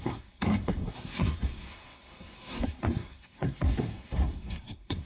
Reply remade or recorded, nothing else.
remade